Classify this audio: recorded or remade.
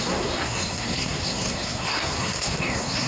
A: remade